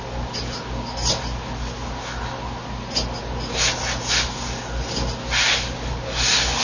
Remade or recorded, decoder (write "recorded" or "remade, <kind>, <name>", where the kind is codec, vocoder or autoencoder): recorded